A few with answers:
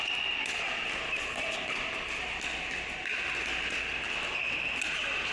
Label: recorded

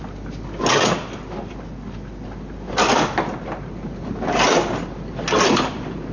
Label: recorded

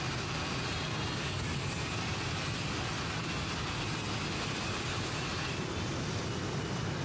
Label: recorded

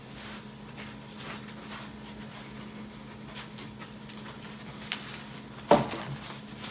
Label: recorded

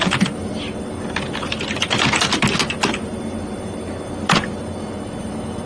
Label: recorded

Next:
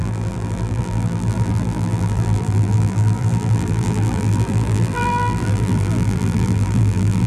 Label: remade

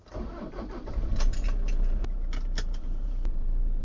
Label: remade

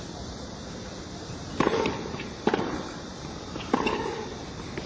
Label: remade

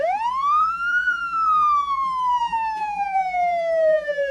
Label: remade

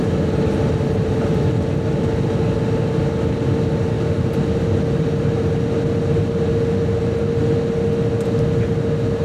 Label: recorded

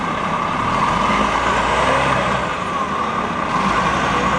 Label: remade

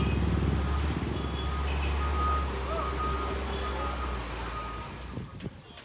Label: recorded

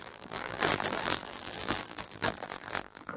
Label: remade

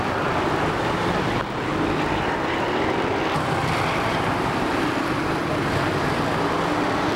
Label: remade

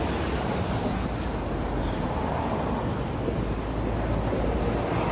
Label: recorded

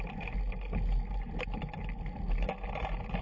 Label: recorded